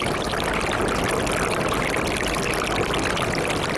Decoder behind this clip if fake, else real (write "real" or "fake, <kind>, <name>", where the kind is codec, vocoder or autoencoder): real